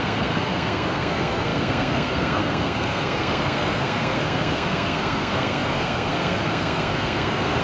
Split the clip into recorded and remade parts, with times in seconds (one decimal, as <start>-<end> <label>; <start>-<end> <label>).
0.0-7.6 remade